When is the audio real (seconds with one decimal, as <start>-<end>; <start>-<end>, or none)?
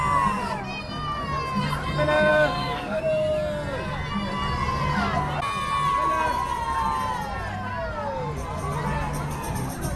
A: 0.0-2.3; 3.0-10.0